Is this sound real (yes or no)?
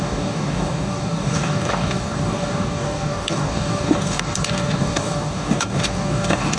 no